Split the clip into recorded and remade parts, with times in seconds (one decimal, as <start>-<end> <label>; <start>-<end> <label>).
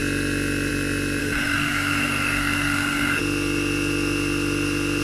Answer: 0.0-1.2 recorded; 1.2-3.2 remade; 3.2-5.0 recorded